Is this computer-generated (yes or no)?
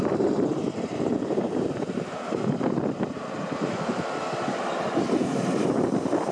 yes